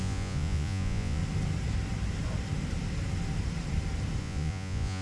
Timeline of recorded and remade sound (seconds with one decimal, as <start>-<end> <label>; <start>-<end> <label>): 0.0-1.2 remade; 1.2-4.2 recorded; 4.2-5.0 remade